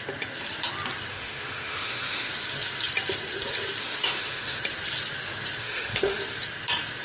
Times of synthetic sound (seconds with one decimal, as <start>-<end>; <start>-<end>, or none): 1.1-2.3; 3.8-4.6; 5.6-6.2